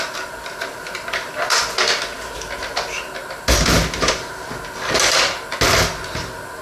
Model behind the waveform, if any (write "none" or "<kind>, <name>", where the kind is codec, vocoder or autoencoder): none